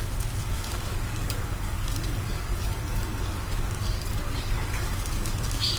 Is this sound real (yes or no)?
no